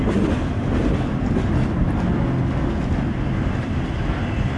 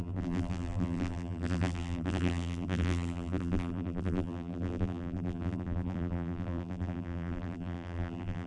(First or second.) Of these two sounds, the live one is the first